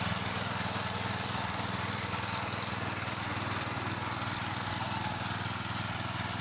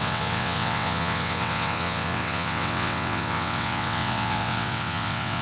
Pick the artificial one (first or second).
second